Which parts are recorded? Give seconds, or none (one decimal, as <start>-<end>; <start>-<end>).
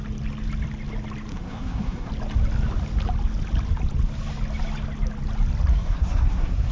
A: 0.0-1.3; 2.1-5.7